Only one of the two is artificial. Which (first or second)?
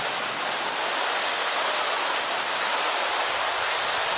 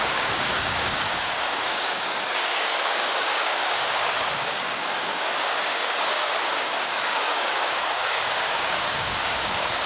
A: second